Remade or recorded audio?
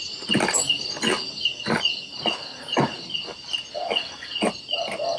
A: recorded